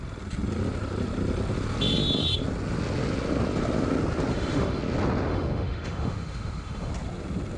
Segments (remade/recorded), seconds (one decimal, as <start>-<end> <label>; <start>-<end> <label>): 0.0-4.3 recorded; 4.3-4.8 remade; 4.8-5.3 recorded; 5.3-6.9 remade; 6.9-7.6 recorded